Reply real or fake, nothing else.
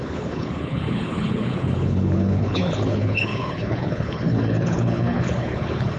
fake